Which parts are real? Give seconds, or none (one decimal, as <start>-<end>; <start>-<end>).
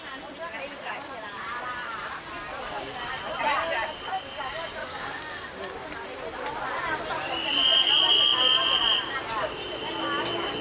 0.0-4.8; 5.6-10.6